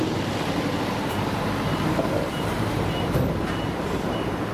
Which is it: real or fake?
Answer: fake